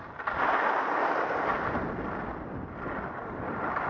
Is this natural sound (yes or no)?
yes